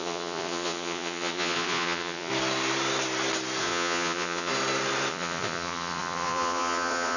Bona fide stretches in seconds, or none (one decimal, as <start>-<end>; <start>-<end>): 2.3-3.6; 4.5-5.1